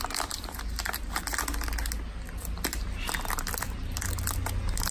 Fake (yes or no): no